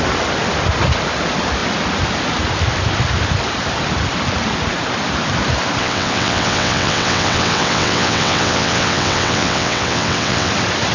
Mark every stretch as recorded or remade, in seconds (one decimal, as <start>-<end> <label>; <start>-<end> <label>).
0.0-5.8 recorded; 5.8-10.5 remade; 10.5-10.9 recorded